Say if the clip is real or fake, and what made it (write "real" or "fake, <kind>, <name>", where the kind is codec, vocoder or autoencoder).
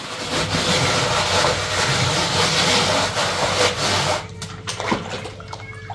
real